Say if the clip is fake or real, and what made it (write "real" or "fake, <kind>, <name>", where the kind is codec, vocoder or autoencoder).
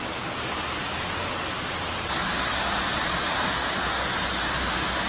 real